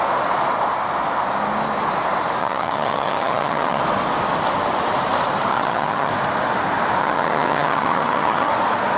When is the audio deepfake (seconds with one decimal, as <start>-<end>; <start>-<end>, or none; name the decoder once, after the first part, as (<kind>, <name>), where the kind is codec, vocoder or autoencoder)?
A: 2.4-3.8 (vocoder, HiFi-GAN); 5.5-6.1; 7.0-8.5